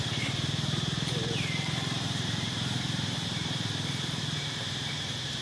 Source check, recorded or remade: remade